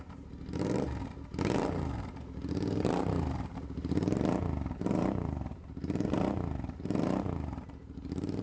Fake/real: fake